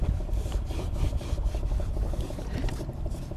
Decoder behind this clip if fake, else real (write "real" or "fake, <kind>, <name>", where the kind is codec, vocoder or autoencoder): real